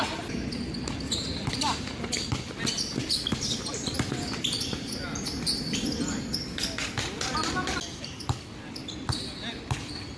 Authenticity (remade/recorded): recorded